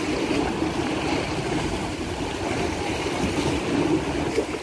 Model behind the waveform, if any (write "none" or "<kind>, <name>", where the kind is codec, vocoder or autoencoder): none